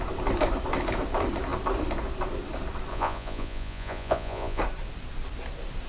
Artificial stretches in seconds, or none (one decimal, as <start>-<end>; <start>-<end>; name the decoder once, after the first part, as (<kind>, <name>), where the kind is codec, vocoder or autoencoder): 2.9-4.6 (vocoder, Vocos)